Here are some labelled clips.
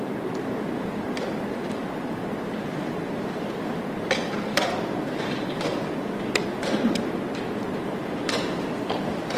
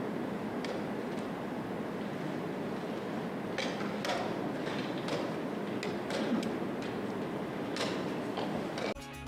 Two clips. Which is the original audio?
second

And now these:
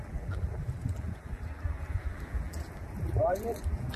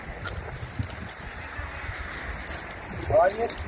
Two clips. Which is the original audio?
second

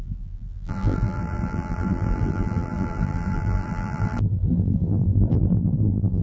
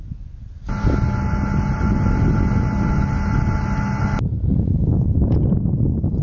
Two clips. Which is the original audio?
second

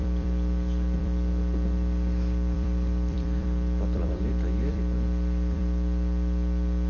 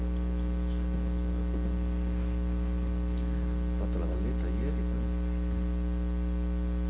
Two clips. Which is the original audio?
second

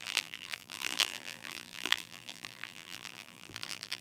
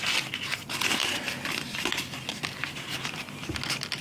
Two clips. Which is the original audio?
second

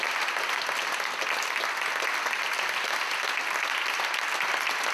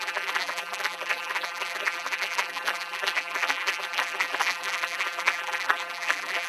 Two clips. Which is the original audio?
first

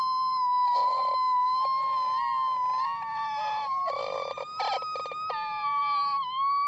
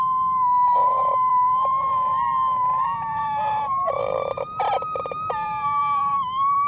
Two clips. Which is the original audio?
first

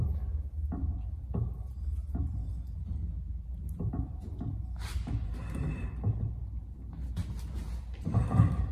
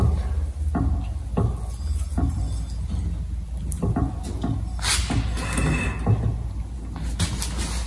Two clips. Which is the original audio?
second